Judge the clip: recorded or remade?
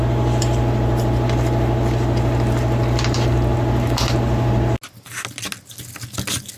recorded